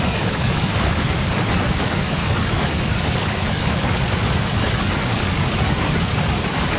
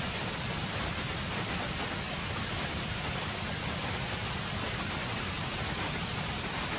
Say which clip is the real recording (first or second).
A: second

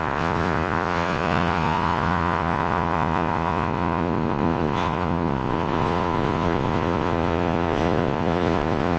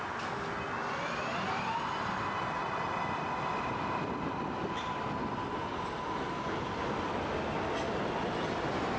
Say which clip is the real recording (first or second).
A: second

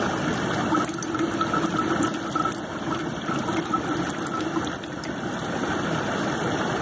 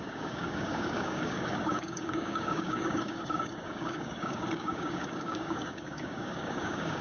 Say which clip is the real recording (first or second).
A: first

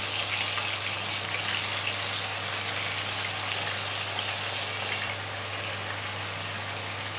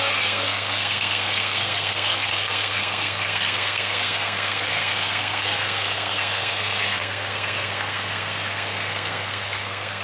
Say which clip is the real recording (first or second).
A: first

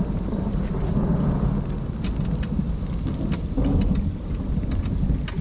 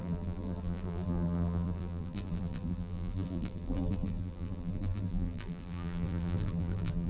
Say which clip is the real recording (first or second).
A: first